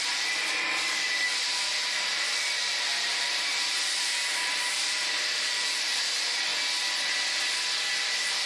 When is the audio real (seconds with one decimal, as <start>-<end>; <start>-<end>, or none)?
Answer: 6.5-8.5